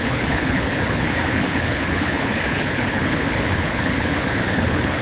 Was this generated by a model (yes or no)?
yes